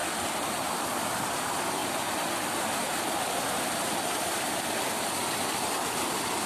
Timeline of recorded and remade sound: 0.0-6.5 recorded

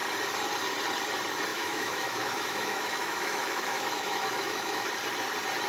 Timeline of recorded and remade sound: 0.0-1.5 recorded; 1.5-4.9 remade; 4.9-5.7 recorded

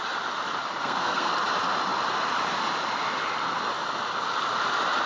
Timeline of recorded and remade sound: 0.0-0.8 recorded; 0.8-1.3 remade; 1.3-5.1 recorded